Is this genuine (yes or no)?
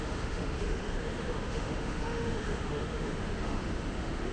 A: no